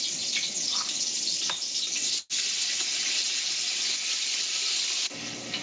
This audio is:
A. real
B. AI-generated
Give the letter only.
A